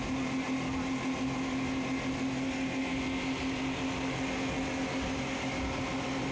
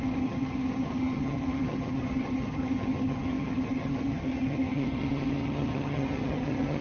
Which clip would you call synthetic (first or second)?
second